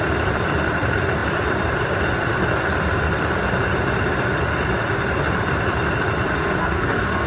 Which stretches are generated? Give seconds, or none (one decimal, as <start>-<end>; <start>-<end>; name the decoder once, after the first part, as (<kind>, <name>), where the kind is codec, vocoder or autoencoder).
6.6-7.3 (codec, SNAC)

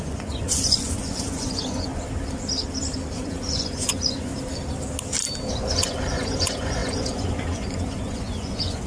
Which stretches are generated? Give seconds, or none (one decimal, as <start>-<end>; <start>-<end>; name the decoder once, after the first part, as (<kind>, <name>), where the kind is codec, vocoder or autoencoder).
0.0-1.9 (vocoder, Vocos); 3.1-4.3; 5.5-8.9